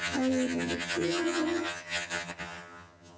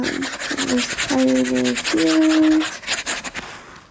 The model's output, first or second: first